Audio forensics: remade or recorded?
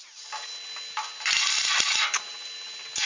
recorded